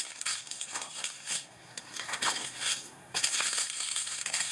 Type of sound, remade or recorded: remade